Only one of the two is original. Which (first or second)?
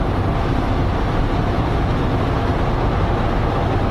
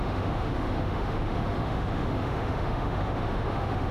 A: first